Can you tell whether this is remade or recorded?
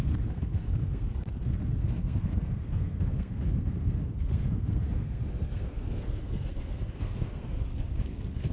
remade